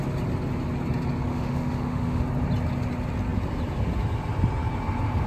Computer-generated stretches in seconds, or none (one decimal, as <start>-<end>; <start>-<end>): 1.3-2.2

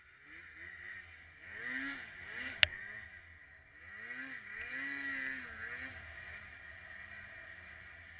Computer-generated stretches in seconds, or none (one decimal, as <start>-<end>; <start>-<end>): none

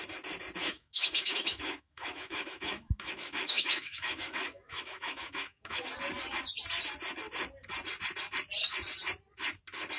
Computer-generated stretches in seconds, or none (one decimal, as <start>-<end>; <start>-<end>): 0.6-5.8

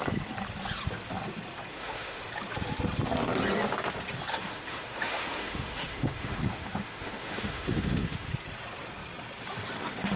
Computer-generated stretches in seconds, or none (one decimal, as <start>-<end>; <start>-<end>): 1.7-2.2; 4.3-8.3

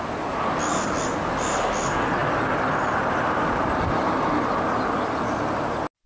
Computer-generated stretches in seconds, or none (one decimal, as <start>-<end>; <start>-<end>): none

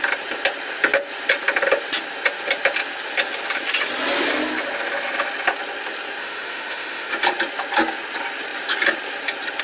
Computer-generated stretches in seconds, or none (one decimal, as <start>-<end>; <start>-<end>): 6.2-7.1

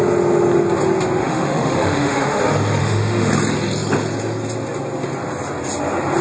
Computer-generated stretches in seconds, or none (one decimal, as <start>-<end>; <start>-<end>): 1.2-2.4; 2.8-3.3

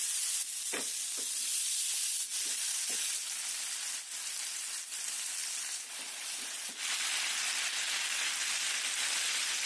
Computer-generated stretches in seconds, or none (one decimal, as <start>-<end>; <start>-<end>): none